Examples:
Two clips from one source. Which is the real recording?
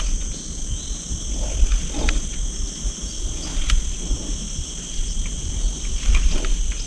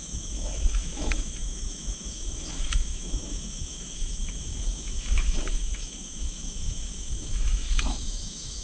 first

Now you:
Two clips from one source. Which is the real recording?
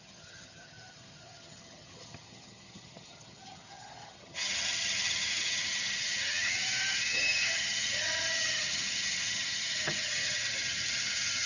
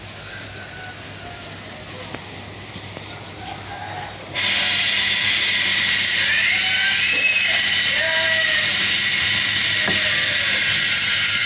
second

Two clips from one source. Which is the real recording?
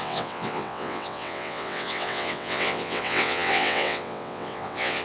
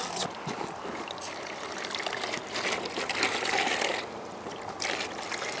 second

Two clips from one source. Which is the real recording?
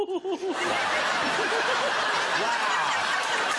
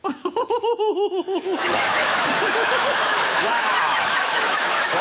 first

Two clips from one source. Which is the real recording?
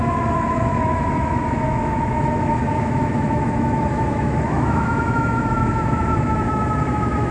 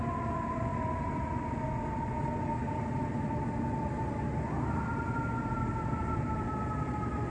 second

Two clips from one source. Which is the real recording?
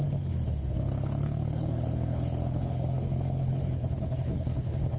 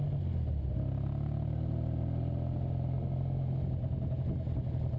second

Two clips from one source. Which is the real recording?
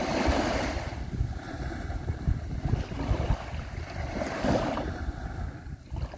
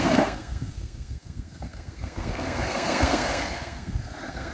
first